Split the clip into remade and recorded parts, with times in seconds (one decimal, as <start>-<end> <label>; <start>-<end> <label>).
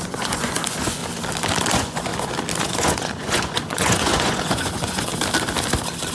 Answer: 0.0-1.0 remade; 1.0-1.7 recorded; 1.7-2.1 remade; 2.1-2.6 recorded; 2.6-5.1 remade; 5.1-6.1 recorded